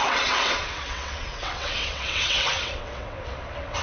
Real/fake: fake